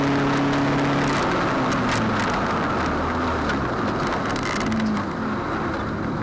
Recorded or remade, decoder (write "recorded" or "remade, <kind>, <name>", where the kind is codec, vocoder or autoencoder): recorded